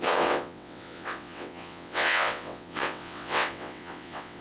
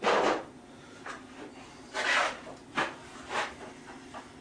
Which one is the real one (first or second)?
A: second